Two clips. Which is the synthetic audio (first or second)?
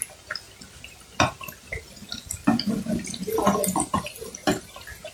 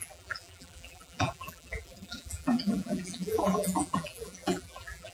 second